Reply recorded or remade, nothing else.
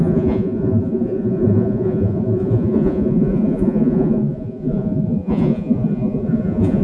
remade